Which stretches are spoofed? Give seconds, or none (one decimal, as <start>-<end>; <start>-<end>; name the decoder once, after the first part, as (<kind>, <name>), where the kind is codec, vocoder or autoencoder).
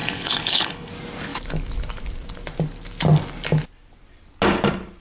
0.0-0.9 (codec, HILCodec)